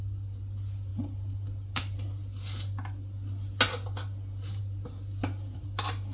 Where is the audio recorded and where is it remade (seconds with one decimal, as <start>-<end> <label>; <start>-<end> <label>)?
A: 0.0-6.1 recorded

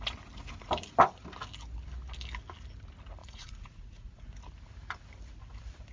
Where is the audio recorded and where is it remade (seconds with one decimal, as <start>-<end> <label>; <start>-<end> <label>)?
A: 0.0-3.2 recorded; 3.2-4.2 remade; 4.2-5.9 recorded

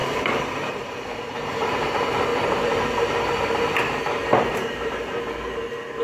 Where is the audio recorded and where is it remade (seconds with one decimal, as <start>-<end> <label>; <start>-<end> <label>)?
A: 0.0-1.3 remade; 1.3-2.3 recorded; 2.3-3.0 remade; 3.0-4.2 recorded; 4.2-5.1 remade; 5.1-6.0 recorded

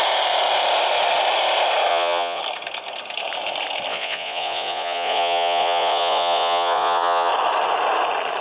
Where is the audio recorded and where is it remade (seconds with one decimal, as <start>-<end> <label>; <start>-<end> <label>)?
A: 0.0-1.9 recorded; 1.9-2.4 remade; 2.4-3.9 recorded; 3.9-7.3 remade; 7.3-8.4 recorded